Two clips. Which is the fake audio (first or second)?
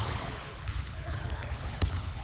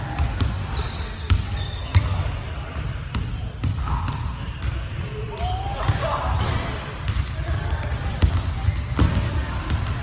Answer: first